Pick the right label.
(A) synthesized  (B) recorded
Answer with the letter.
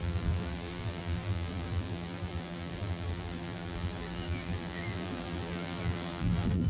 A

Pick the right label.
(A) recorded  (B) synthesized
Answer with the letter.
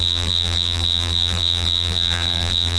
B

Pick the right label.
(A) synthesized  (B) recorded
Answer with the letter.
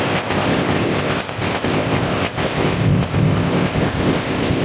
A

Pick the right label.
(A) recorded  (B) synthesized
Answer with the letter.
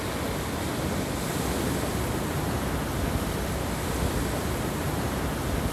A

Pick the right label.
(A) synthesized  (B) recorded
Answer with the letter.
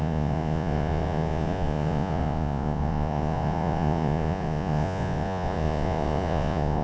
A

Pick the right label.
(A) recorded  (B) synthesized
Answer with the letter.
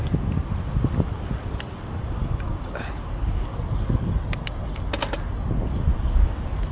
A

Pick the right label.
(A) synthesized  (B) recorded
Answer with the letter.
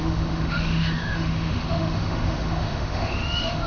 A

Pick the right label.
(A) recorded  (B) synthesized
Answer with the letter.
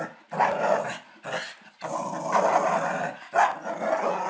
A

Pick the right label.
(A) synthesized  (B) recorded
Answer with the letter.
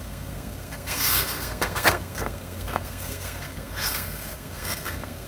A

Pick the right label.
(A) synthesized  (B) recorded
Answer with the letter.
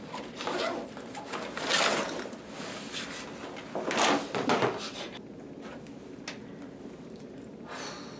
B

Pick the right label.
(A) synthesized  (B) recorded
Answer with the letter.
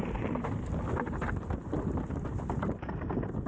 B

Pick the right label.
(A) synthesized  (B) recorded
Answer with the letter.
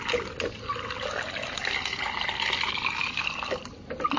B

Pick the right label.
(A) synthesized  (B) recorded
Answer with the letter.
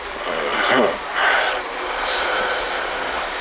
B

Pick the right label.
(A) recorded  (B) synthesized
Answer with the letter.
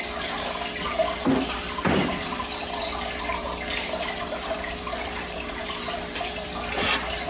A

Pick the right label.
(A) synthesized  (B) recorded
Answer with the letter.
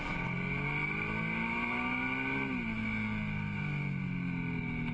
B